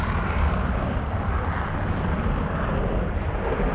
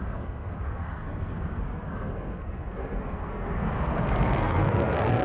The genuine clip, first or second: first